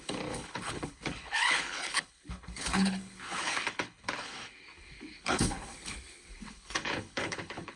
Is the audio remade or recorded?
remade